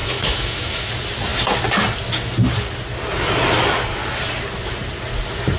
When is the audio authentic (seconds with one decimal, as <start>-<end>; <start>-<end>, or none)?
0.9-5.6